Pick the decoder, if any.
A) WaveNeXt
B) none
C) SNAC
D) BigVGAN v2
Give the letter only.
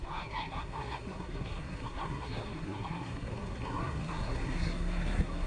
C